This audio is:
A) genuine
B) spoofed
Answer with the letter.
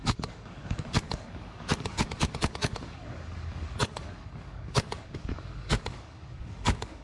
B